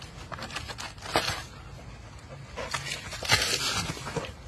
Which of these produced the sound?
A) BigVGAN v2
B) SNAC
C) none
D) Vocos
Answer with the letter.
C